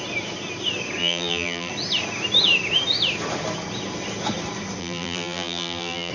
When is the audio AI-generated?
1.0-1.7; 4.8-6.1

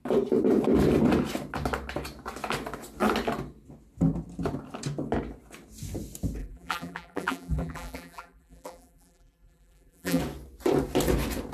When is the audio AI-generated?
6.4-10.2

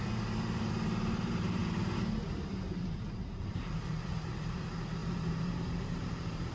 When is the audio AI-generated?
0.0-1.6; 2.7-6.5

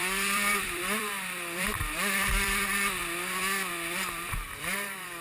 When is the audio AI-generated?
0.0-3.0; 3.7-5.2